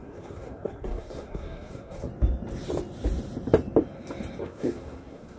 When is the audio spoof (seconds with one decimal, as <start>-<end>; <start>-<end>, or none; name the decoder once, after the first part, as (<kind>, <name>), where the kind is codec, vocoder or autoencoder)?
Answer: 0.0-2.1 (codec, SNAC); 4.4-5.4

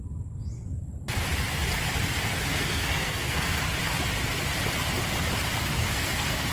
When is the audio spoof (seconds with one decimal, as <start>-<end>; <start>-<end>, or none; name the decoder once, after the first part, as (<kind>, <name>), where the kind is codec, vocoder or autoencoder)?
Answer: 2.5-3.6 (codec, SNAC); 5.7-6.5